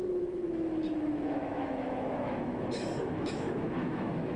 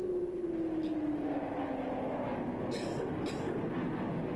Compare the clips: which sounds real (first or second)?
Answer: second